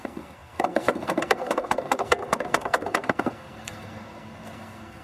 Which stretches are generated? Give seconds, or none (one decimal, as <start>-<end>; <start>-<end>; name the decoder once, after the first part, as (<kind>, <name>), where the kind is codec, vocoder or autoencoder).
0.0-5.0 (codec, SNAC)